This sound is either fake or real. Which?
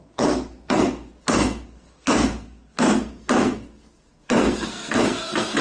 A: fake